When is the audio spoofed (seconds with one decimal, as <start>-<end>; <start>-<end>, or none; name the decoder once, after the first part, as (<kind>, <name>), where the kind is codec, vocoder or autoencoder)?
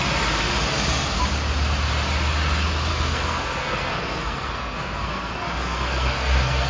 2.9-6.7 (codec, SNAC)